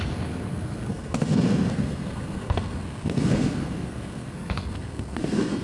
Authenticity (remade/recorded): remade